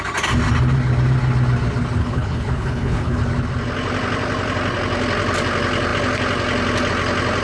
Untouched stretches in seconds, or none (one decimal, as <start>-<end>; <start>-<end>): 0.0-2.0; 3.2-7.4